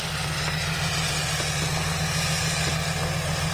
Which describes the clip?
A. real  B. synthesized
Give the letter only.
A